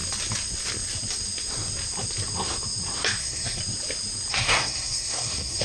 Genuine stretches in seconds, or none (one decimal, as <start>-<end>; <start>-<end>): 0.0-3.2; 3.6-4.3